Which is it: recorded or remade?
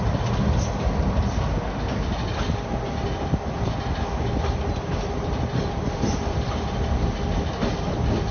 recorded